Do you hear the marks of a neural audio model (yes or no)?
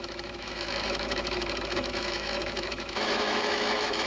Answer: yes